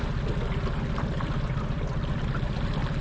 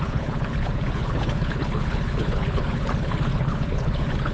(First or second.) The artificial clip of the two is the second